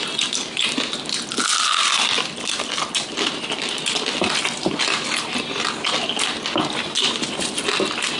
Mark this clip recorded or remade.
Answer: recorded